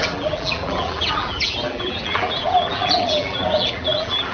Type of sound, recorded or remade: remade